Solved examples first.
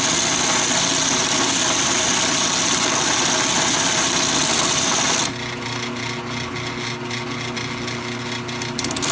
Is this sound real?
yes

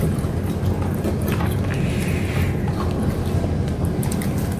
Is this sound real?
yes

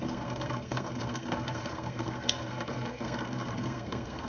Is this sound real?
no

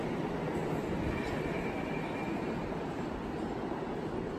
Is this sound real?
yes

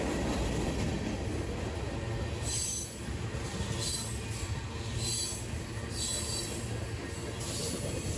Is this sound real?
yes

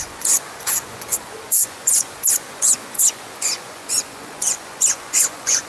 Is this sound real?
no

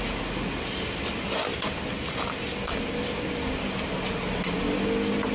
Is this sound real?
yes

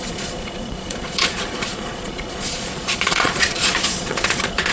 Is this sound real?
no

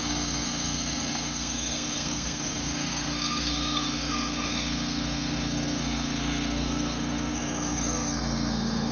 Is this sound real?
no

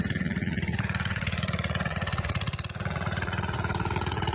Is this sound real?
no